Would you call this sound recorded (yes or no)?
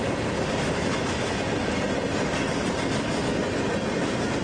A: yes